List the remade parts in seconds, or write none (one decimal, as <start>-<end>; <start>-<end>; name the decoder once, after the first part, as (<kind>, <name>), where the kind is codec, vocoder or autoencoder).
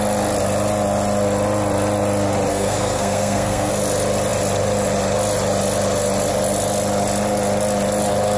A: 2.5-3.7 (codec, SNAC)